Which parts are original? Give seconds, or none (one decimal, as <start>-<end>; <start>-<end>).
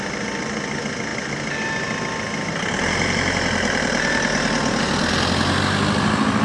0.0-6.4